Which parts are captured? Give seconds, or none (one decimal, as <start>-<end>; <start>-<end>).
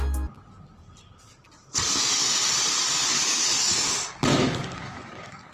0.0-3.0; 3.8-4.3